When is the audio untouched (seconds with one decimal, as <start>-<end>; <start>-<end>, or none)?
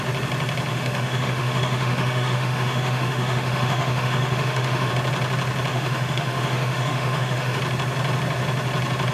0.0-0.7; 4.9-5.7; 7.6-9.1